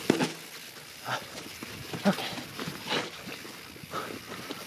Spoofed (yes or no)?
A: no